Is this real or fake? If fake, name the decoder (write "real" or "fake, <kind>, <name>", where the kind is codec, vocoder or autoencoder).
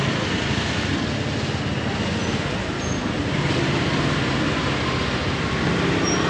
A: real